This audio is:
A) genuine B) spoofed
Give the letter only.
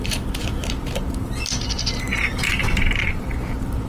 B